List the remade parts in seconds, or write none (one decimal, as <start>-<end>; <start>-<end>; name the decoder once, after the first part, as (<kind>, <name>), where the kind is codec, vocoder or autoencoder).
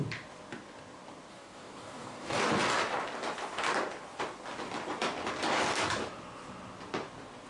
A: 1.3-2.5 (codec, DAC)